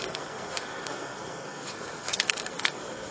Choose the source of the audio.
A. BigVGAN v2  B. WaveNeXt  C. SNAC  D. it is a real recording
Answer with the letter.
C